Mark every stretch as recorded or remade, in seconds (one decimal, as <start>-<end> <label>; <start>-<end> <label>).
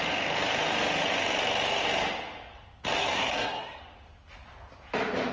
0.0-3.0 recorded; 3.0-3.8 remade; 3.8-5.3 recorded